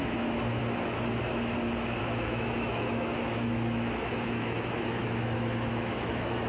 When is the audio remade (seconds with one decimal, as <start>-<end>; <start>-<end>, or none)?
0.0-0.6; 2.0-6.5